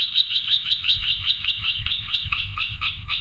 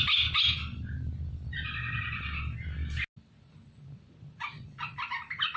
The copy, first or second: first